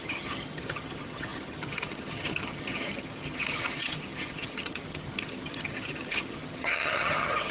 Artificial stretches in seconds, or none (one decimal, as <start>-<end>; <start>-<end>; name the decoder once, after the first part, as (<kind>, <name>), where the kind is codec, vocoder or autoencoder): 0.0-7.5 (vocoder, HiFi-GAN)